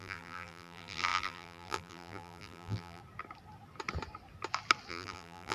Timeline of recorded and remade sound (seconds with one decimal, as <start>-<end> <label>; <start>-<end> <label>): 0.0-3.0 remade; 3.0-4.9 recorded; 4.9-5.5 remade